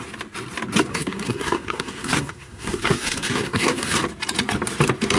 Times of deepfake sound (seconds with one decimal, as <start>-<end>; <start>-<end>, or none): 0.9-4.0